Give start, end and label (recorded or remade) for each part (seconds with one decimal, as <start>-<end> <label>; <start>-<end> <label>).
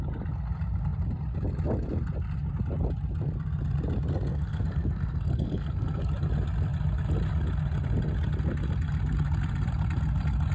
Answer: 0.0-4.3 recorded; 4.3-6.0 remade; 6.0-10.5 recorded